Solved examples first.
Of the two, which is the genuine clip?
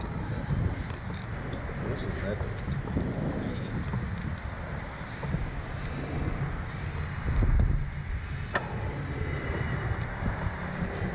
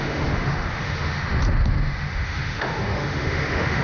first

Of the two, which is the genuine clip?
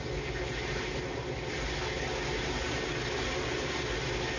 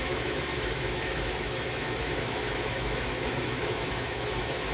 first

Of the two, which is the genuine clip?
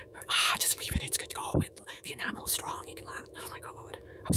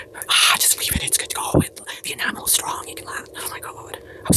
second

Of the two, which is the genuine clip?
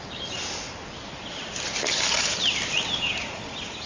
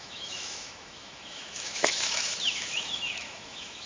first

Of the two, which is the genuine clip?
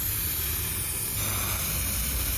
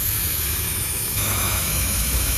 first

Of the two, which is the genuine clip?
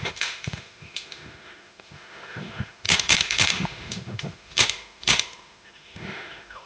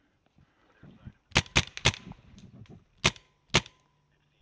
second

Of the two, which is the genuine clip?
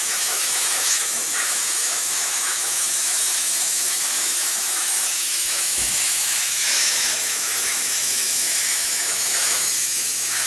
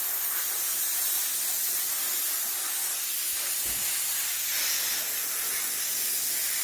second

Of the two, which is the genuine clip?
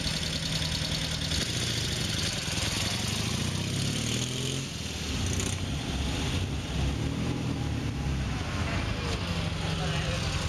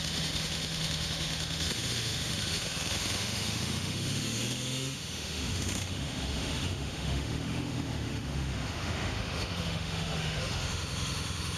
first